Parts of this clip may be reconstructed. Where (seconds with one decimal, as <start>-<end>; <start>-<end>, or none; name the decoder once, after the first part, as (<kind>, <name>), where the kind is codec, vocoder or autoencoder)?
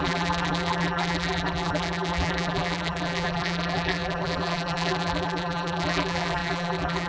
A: 0.0-7.1 (vocoder, BigVGAN v2)